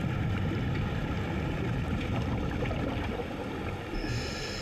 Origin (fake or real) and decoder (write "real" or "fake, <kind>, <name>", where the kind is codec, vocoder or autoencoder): real